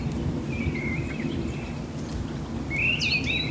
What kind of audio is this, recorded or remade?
recorded